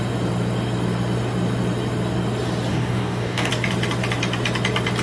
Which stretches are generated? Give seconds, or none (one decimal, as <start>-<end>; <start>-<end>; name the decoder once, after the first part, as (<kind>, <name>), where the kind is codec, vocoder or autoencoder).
2.7-3.5 (codec, DAC)